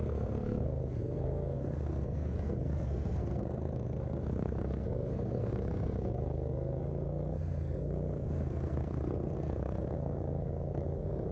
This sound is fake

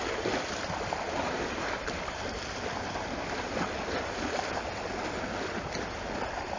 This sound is real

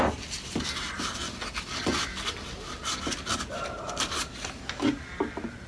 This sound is real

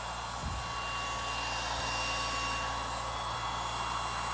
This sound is real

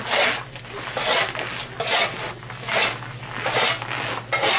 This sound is real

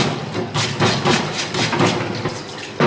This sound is real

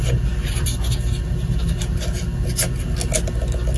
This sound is real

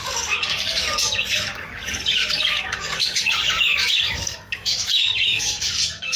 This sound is fake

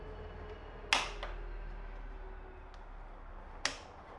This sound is real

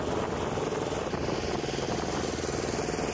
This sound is real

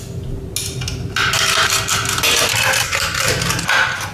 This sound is real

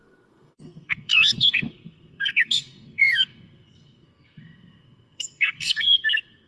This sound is fake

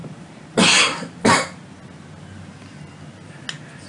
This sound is real